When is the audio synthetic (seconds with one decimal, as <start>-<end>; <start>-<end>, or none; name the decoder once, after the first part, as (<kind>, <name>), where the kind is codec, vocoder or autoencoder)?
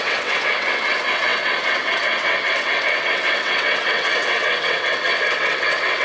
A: 0.0-6.0 (vocoder, WaveNeXt)